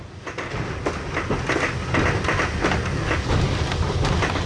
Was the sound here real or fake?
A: real